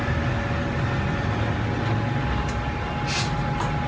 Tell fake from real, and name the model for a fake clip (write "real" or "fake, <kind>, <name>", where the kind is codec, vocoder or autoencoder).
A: real